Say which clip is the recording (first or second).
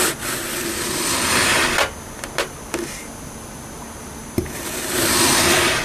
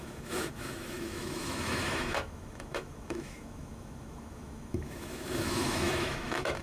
first